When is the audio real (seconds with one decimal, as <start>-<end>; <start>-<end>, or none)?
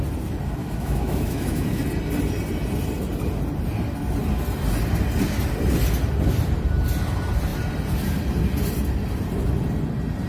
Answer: 0.0-0.6; 1.8-10.3